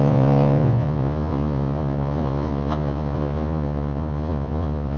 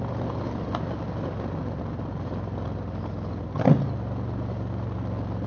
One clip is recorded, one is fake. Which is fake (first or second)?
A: first